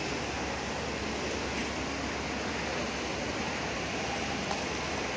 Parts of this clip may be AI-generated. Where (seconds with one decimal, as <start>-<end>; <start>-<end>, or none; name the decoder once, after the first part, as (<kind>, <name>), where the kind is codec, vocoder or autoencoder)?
3.1-3.9 (vocoder, BigVGAN v2)